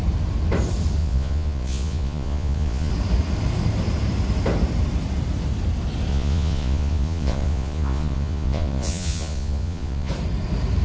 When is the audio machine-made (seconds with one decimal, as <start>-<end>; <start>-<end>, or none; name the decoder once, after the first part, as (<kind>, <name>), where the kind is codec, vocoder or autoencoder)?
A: 1.0-2.9 (vocoder, Vocos); 6.1-10.1